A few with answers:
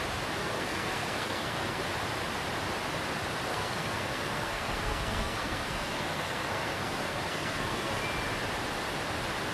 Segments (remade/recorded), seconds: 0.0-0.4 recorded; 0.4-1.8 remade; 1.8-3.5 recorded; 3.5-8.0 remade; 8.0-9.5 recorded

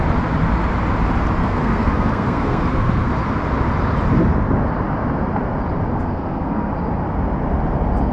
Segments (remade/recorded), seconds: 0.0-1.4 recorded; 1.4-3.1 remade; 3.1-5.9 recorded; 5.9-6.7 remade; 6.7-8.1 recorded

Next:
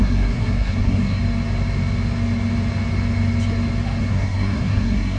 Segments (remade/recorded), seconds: 0.0-1.2 remade; 1.2-4.0 recorded; 4.0-5.2 remade

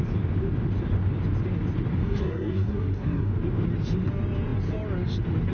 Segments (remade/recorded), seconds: 0.0-2.0 recorded; 2.0-3.3 remade; 3.3-5.5 recorded

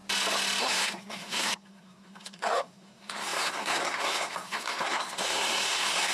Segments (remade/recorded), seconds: 0.0-0.6 recorded; 0.6-6.1 remade